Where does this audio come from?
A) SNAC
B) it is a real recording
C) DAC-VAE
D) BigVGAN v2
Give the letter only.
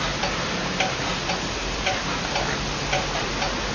B